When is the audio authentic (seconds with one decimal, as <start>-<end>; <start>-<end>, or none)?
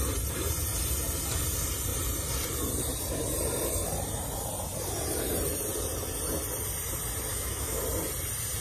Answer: 0.0-7.3; 7.8-8.6